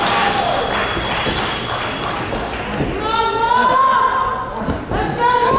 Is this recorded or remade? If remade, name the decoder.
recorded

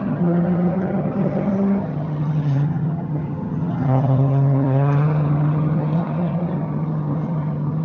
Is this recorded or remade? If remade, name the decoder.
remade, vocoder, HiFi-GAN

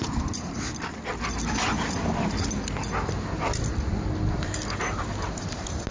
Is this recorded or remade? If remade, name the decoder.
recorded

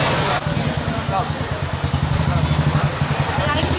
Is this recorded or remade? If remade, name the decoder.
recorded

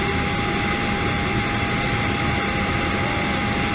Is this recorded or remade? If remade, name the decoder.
recorded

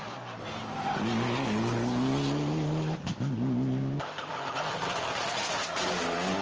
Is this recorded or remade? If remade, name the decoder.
recorded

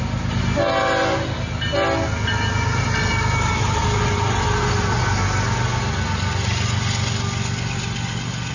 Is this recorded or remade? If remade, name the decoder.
recorded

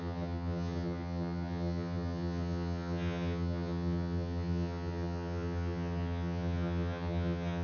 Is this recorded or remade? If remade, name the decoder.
remade, vocoder, HiFi-GAN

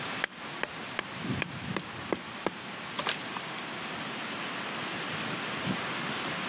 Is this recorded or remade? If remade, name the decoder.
recorded